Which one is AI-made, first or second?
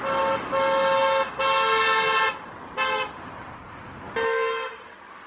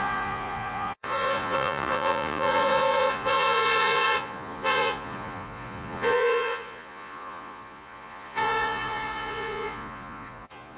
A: second